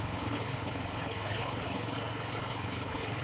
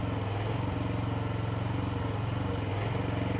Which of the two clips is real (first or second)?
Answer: second